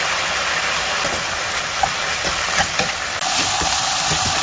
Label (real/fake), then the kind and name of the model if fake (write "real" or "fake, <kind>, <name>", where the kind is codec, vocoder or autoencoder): real